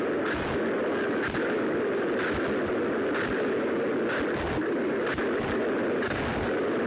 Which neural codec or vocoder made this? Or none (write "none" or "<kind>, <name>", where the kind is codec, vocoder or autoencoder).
none